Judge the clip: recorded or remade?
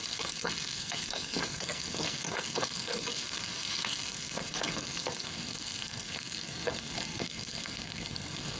remade